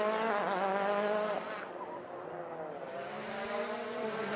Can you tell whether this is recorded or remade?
recorded